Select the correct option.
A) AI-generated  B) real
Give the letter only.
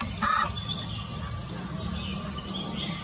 B